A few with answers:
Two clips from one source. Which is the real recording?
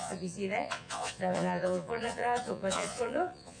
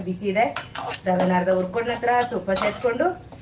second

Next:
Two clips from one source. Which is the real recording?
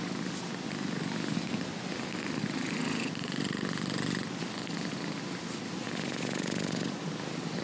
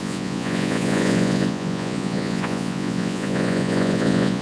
first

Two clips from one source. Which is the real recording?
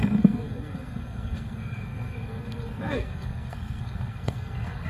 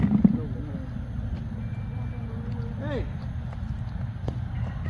second